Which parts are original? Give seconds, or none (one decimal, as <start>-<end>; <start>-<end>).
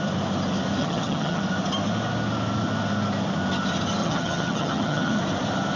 0.0-0.8; 1.4-4.0; 5.2-5.8